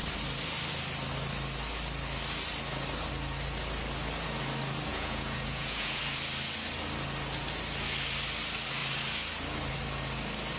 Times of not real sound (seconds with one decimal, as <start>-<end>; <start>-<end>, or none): 4.9-6.0